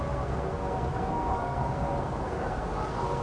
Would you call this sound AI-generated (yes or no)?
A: yes